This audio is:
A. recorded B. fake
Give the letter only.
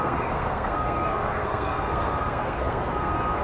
B